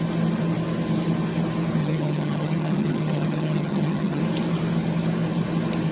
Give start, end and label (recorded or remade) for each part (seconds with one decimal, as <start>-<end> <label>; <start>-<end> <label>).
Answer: 0.0-1.8 recorded; 1.8-4.2 remade; 4.2-5.9 recorded